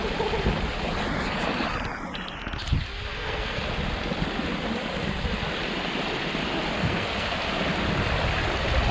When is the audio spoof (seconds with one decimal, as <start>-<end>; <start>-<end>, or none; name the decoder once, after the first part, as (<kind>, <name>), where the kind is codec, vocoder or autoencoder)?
3.1-3.6 (codec, SNAC); 6.8-7.4